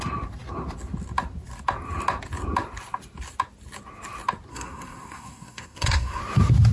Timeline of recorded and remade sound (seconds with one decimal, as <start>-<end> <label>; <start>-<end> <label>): 0.0-4.5 recorded; 4.5-6.2 remade; 6.2-6.7 recorded